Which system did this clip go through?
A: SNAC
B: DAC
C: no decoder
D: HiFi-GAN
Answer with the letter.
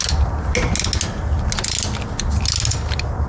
C